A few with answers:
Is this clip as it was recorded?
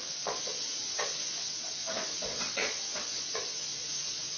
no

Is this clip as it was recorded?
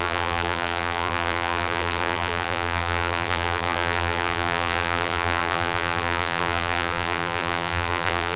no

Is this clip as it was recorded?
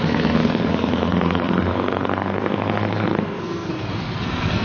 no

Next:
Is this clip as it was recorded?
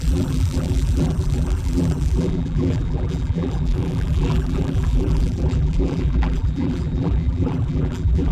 no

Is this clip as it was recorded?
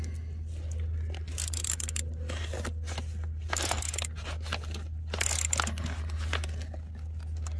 yes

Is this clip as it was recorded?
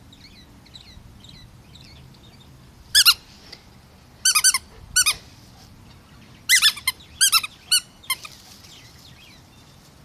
yes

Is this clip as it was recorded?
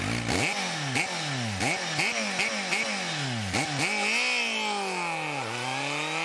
yes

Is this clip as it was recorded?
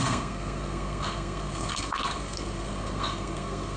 no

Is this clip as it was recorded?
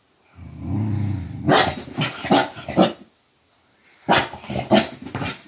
yes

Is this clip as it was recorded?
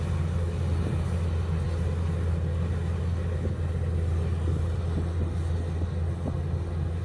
yes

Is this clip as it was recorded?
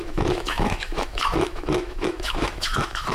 no